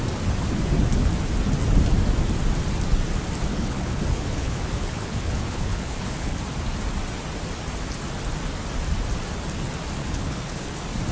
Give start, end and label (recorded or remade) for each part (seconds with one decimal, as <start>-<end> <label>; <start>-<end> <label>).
0.0-3.5 recorded; 3.5-6.4 remade; 6.4-10.0 recorded; 10.0-10.7 remade; 10.7-11.1 recorded